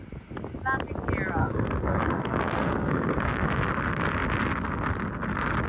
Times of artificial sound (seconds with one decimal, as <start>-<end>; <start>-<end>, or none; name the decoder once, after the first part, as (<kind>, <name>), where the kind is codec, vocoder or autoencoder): 1.4-3.7 (codec, SNAC)